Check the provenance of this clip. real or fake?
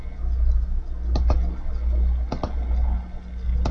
real